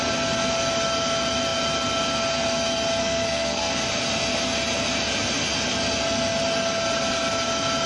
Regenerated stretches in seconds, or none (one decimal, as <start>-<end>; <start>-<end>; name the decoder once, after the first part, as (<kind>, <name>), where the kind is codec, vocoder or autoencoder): 3.0-3.7 (codec, SNAC)